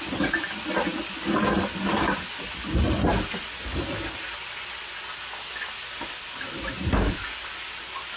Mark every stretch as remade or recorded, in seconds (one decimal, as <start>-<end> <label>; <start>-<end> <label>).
0.0-8.2 recorded